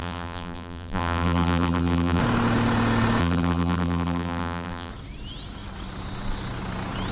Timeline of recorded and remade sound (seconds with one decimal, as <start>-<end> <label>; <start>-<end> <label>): 0.0-2.2 remade; 2.2-3.2 recorded; 3.2-4.9 remade; 4.9-7.1 recorded